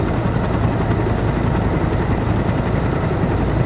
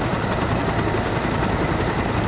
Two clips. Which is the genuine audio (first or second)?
first